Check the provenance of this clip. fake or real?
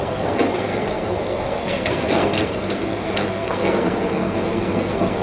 fake